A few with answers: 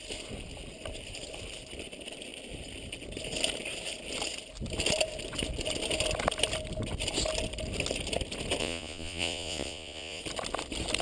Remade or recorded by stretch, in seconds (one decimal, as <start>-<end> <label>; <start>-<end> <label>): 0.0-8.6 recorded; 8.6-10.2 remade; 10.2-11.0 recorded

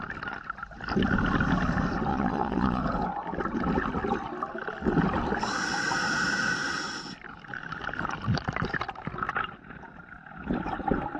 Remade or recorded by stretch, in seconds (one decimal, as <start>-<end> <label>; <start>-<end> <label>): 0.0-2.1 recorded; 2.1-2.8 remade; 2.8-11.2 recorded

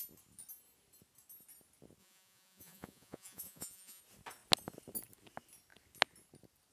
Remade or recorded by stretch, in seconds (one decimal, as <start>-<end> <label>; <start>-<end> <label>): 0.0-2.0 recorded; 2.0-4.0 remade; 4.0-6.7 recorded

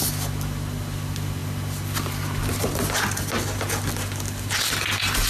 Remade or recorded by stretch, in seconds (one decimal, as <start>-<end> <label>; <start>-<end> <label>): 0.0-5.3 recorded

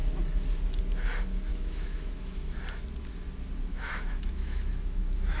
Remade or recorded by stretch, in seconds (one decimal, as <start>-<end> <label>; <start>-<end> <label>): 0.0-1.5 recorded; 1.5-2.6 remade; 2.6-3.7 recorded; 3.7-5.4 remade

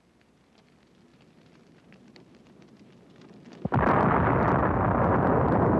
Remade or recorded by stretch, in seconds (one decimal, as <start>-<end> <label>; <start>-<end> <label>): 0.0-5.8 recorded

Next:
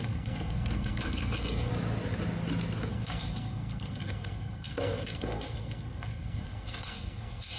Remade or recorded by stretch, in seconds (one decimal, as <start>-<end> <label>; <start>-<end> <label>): 0.0-1.7 remade; 1.7-2.9 recorded; 2.9-7.6 remade

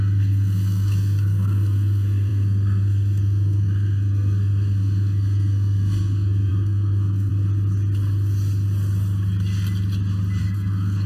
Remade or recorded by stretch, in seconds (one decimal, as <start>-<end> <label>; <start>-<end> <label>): 0.0-7.3 remade; 7.3-10.4 recorded; 10.4-11.1 remade